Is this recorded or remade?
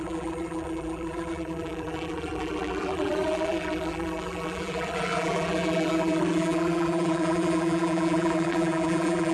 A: remade